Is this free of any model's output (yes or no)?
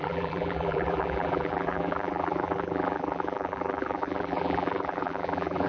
no